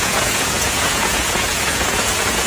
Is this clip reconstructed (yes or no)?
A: yes